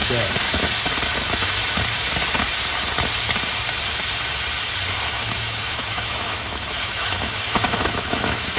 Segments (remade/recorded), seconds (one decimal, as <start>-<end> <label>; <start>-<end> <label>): 0.0-5.1 recorded; 5.1-8.6 remade